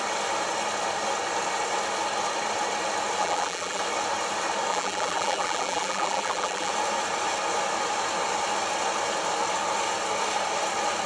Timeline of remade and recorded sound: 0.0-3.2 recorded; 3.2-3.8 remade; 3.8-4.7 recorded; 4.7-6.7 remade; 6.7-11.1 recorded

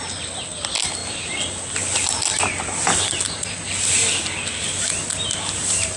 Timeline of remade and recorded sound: 0.0-6.0 recorded

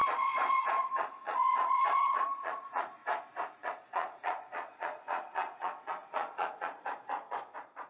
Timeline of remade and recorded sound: 0.0-3.0 remade; 3.0-3.6 recorded; 3.6-7.9 remade

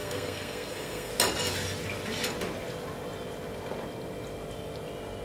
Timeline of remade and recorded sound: 0.0-1.1 remade; 1.1-5.2 recorded